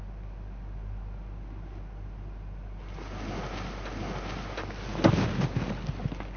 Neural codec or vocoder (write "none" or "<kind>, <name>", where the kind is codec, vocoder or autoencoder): none